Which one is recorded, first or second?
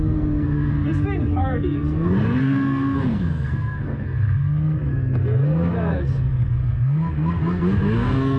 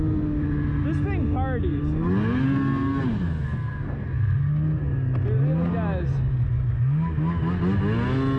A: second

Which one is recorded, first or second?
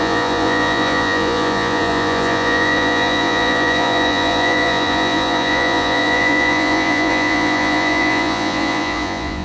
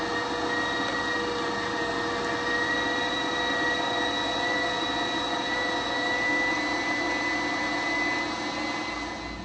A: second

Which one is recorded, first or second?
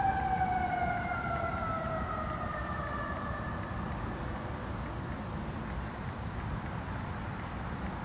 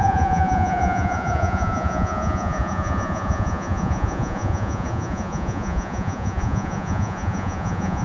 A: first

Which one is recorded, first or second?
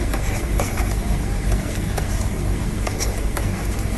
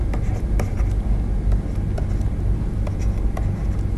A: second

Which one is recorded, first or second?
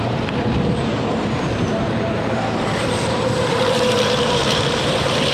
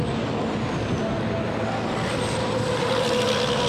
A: second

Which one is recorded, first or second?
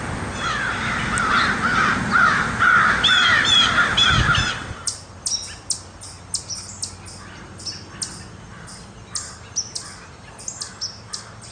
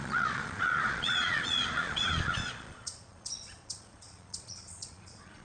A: first